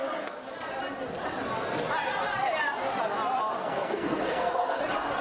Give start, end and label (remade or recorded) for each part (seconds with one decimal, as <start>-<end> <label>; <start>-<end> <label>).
0.0-3.6 recorded; 3.6-4.8 remade; 4.8-5.2 recorded